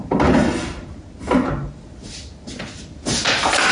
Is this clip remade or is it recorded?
recorded